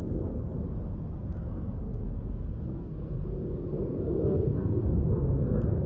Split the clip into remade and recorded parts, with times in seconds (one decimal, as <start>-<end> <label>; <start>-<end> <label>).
0.0-0.5 remade; 0.5-1.3 recorded; 1.3-5.9 remade